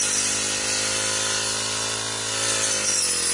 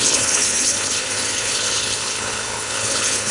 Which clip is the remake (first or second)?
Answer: second